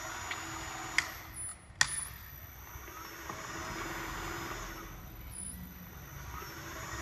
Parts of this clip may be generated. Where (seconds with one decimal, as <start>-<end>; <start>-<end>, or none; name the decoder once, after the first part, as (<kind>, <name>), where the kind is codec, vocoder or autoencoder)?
none